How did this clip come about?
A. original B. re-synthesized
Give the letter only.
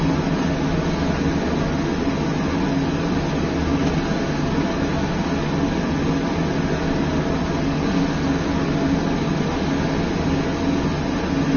A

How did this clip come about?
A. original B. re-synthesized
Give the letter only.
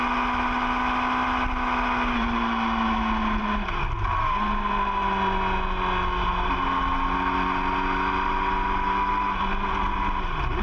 A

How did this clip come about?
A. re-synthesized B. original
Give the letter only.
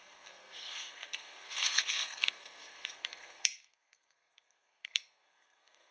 A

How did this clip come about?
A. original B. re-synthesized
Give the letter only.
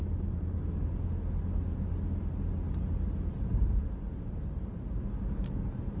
A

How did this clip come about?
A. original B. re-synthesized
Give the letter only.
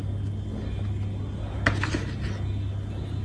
A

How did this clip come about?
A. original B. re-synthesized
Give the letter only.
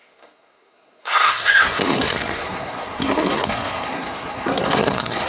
B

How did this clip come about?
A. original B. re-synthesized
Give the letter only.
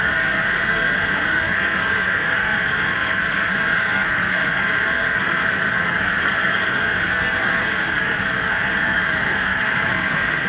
B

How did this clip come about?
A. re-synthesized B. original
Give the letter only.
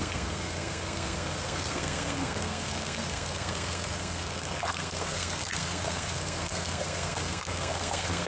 A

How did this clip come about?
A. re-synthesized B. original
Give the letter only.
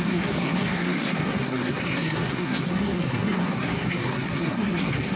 A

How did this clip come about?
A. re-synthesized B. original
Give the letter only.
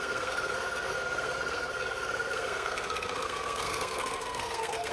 A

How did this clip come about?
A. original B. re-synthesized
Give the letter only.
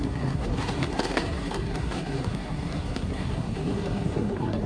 B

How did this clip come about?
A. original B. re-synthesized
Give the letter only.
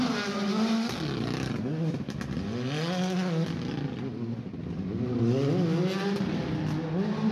A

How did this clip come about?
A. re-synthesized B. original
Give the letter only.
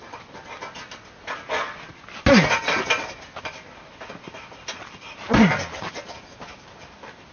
B